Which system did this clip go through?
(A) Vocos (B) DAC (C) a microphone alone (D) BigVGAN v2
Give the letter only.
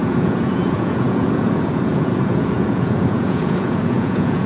A